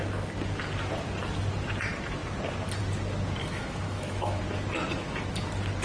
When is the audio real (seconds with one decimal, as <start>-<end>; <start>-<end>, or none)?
0.0-3.4; 4.4-5.8